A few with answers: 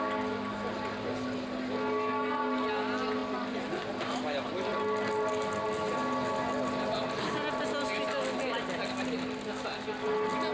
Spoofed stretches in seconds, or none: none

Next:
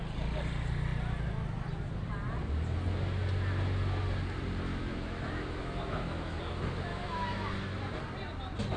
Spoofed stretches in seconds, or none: 4.7-6.4 (autoencoder, DAC-VAE); 6.9-7.5

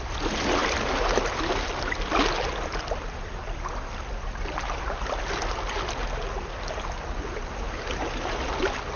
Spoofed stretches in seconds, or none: none

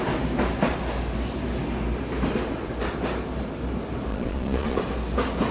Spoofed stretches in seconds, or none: 4.1-4.8 (vocoder, Vocos)

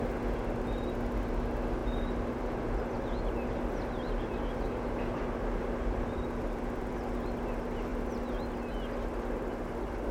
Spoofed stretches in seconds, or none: none

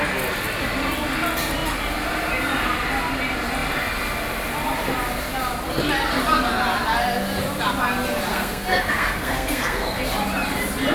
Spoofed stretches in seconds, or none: 8.3-10.0 (codec, SNAC)

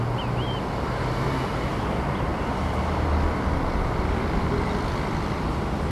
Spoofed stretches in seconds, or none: none

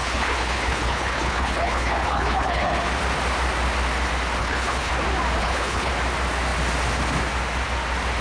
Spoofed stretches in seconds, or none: 0.0-2.8 (codec, HILCodec); 4.4-4.9; 5.4-5.9